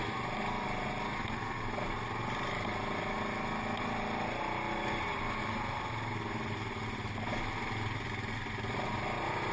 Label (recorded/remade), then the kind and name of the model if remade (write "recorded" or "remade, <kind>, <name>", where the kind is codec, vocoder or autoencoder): recorded